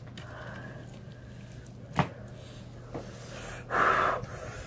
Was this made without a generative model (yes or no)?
yes